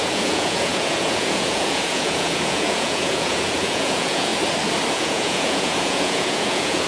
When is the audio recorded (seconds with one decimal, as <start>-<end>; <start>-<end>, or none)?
4.3-4.9

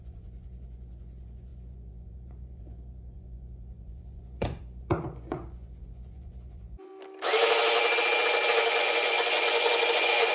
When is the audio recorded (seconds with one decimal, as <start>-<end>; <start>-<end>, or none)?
6.9-8.7